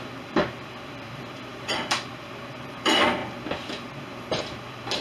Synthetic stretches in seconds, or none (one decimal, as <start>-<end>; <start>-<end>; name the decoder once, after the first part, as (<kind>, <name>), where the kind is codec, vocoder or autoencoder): 0.0-3.2 (vocoder, BigVGAN v2); 4.4-5.0